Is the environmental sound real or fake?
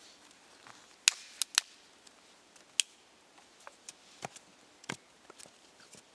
real